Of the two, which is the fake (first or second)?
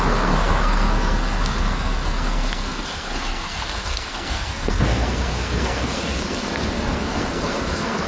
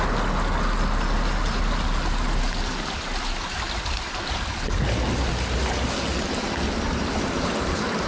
first